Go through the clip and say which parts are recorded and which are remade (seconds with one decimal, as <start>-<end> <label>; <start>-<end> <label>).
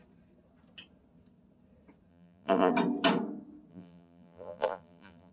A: 0.0-2.1 recorded; 2.1-2.7 remade; 2.7-3.7 recorded; 3.7-5.3 remade